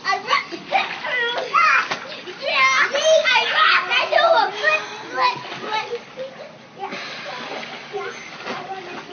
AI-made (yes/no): no